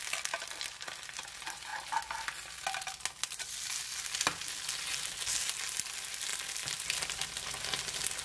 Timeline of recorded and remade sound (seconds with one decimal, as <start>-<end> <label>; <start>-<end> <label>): 0.0-8.2 recorded